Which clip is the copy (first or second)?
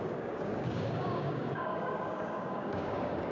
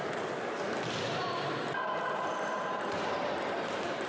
first